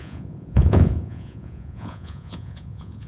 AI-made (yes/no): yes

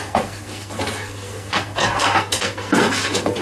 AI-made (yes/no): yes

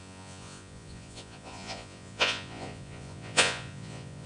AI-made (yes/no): yes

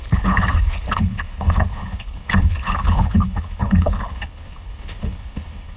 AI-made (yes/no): yes